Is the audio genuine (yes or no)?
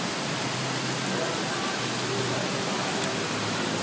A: yes